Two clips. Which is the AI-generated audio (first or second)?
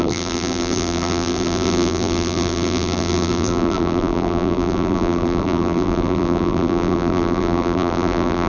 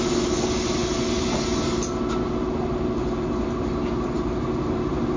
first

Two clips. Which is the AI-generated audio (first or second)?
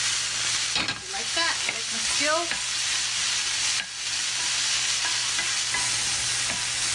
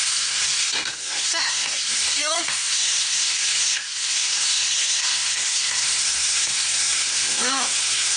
second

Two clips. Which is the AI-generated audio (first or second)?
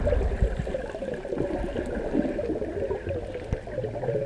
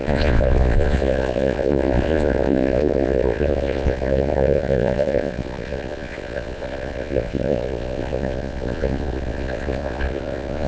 second